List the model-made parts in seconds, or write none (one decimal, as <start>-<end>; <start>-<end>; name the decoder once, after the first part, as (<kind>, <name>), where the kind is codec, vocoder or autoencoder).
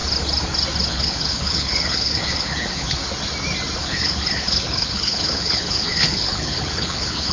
0.9-3.0 (codec, HILCodec); 3.8-7.3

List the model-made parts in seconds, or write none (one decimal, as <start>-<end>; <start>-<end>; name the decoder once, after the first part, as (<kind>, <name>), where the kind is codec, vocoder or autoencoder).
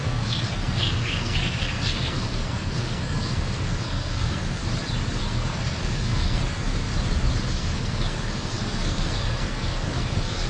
0.0-4.6 (codec, SNAC); 5.2-6.9; 7.5-10.5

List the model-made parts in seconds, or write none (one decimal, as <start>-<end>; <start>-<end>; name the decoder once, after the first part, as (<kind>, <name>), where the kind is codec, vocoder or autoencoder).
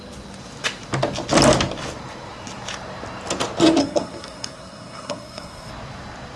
3.8-5.7 (codec, SNAC)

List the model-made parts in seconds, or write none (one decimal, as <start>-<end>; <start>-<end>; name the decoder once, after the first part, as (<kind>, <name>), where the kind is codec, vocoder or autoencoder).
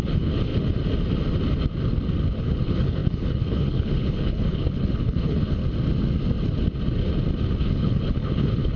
0.0-0.5 (codec, HILCodec); 2.4-5.6; 7.6-8.8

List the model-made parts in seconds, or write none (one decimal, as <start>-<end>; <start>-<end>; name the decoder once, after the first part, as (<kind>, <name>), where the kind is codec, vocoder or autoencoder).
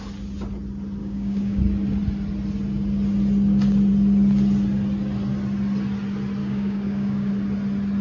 1.0-1.6 (codec, DAC); 6.4-7.3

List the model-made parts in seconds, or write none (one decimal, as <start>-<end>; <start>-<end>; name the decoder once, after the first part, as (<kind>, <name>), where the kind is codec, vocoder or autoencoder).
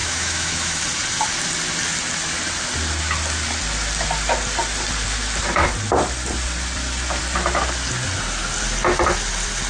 0.0-0.8 (autoencoder, DAC-VAE)